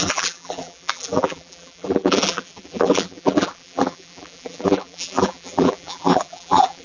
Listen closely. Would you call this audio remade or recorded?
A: remade